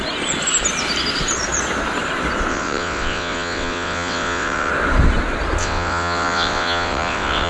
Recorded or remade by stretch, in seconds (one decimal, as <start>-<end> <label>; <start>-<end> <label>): 0.0-2.5 recorded; 2.5-4.7 remade; 4.7-5.6 recorded; 5.6-7.5 remade